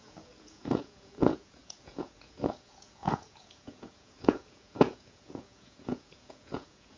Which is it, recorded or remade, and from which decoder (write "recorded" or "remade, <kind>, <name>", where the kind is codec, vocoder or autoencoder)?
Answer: remade, vocoder, Vocos